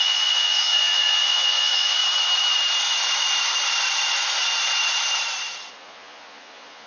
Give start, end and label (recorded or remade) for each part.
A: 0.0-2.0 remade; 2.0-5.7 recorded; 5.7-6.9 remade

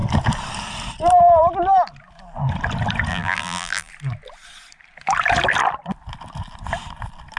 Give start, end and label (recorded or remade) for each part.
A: 0.0-3.1 recorded; 3.1-3.9 remade; 3.9-7.4 recorded

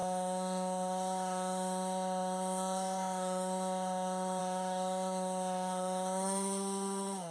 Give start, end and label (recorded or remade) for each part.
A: 0.0-7.3 remade

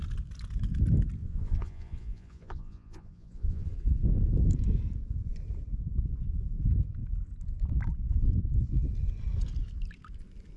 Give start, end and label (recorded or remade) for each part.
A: 0.0-1.2 recorded; 1.2-3.7 remade; 3.7-10.6 recorded

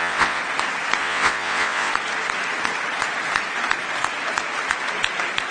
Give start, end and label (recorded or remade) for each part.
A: 0.0-0.4 remade; 0.4-1.0 recorded; 1.0-1.9 remade; 1.9-5.5 recorded

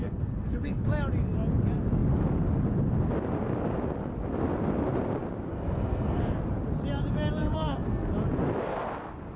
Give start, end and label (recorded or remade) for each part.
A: 0.0-0.9 remade; 0.9-5.5 recorded; 5.5-6.2 remade; 6.2-7.4 recorded; 7.4-8.1 remade; 8.1-9.4 recorded

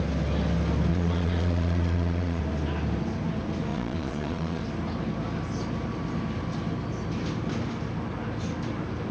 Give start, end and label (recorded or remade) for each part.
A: 0.0-0.9 recorded; 0.9-2.4 remade; 2.4-3.7 recorded; 3.7-4.6 remade; 4.6-9.1 recorded

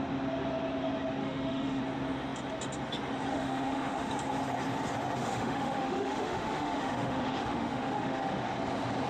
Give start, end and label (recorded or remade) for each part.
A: 0.0-1.2 recorded; 1.2-1.8 remade; 1.8-3.3 recorded; 3.3-4.1 remade; 4.1-5.2 recorded; 5.2-8.3 remade; 8.3-9.1 recorded